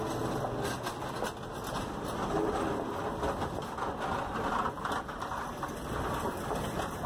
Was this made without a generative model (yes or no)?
yes